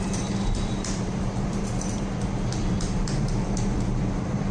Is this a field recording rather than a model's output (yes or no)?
no